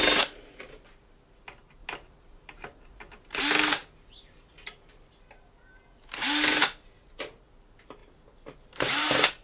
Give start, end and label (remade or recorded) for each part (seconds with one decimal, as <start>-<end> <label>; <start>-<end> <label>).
0.0-1.8 recorded; 1.8-3.4 remade; 3.4-8.0 recorded; 8.0-9.0 remade; 9.0-9.4 recorded